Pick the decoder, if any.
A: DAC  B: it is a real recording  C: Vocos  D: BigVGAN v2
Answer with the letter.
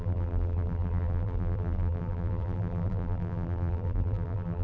D